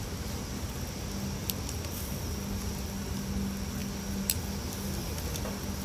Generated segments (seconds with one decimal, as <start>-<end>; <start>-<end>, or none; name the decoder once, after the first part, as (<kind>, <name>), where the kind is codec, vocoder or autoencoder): none